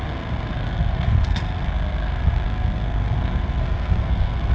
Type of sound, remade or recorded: remade